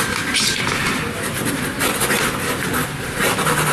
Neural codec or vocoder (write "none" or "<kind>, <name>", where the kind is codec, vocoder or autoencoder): none